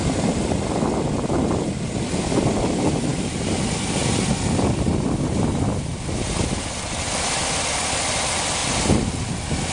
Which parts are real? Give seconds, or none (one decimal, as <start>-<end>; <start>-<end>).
0.0-9.7